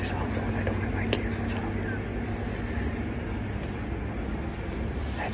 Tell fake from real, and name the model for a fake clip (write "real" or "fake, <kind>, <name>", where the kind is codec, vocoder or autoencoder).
real